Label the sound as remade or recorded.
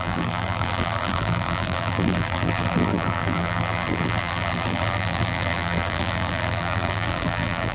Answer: remade